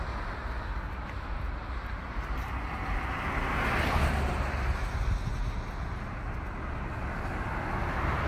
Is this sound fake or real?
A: real